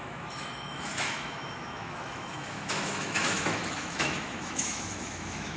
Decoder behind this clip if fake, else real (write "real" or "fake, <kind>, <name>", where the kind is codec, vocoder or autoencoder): fake, autoencoder, DAC-VAE